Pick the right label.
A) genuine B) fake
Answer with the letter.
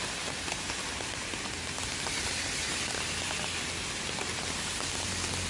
A